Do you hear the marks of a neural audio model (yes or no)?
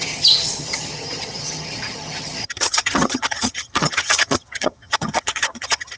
yes